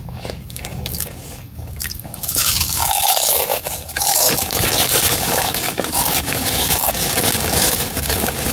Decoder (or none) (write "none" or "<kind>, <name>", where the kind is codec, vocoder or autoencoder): codec, DAC